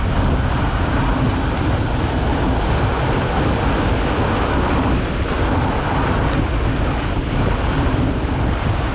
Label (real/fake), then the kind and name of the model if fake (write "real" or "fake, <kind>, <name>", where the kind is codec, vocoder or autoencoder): real